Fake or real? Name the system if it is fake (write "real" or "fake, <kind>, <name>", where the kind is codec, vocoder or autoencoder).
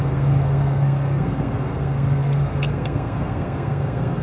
fake, codec, SNAC